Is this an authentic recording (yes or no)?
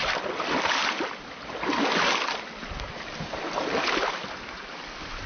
yes